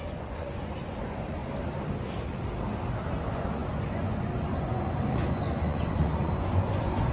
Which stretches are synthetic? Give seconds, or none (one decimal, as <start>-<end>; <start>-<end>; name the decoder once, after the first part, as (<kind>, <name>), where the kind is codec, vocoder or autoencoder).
0.0-1.4 (vocoder, Vocos); 3.2-7.1